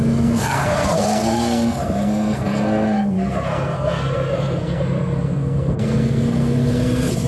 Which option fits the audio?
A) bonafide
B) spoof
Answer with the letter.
B